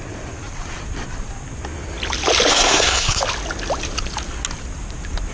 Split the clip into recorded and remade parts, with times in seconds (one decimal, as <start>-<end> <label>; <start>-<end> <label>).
0.0-2.5 recorded; 2.5-3.2 remade; 3.2-5.3 recorded